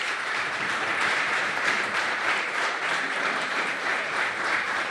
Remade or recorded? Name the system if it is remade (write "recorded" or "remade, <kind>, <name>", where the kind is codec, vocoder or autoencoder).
remade, vocoder, BigVGAN v2